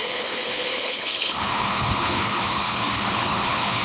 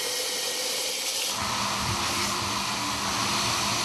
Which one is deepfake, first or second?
first